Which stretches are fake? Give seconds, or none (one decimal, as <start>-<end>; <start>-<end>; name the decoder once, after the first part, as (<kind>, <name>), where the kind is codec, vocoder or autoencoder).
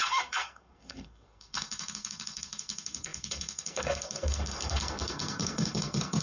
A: 0.0-6.2 (codec, SNAC)